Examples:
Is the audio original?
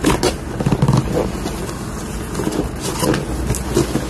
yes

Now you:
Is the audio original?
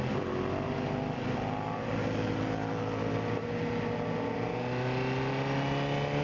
yes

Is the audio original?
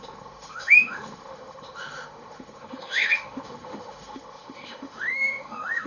no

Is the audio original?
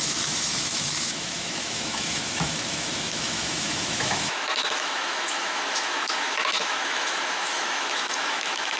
no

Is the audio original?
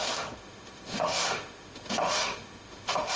no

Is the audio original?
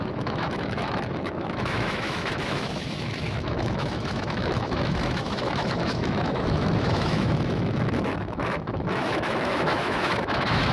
no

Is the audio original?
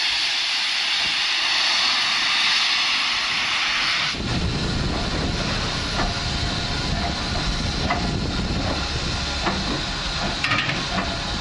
yes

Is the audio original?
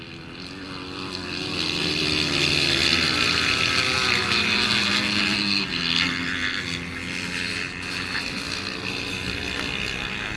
yes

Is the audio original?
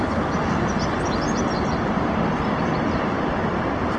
yes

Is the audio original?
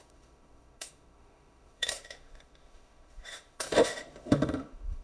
no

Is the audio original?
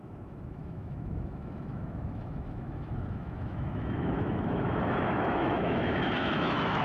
no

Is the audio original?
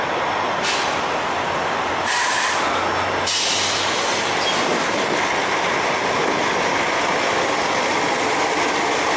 yes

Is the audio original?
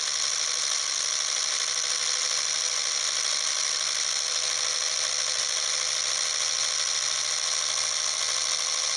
yes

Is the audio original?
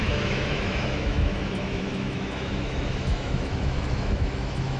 no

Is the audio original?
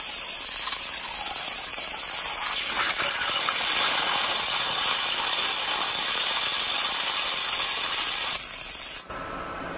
yes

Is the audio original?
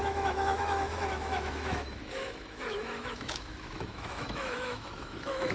no